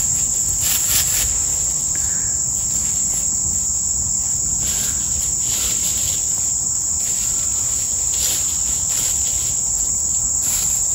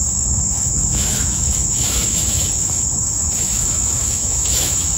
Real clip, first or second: first